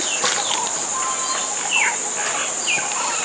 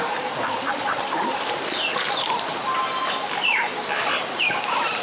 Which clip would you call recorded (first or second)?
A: first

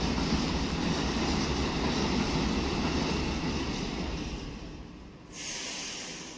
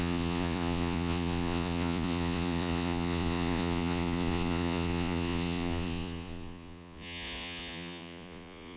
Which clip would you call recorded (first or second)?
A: first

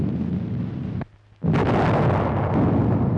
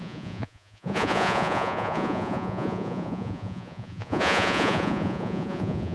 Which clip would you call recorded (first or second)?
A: first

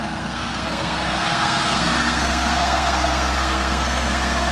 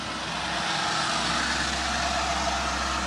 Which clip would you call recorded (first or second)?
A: second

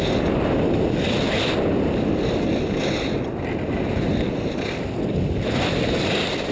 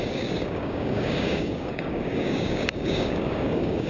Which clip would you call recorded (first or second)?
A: first